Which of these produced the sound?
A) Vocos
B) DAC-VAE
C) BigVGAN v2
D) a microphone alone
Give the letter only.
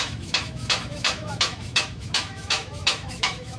B